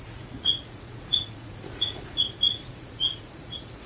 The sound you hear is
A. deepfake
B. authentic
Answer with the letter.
A